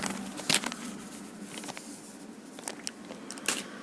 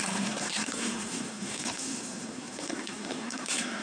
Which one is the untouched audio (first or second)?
first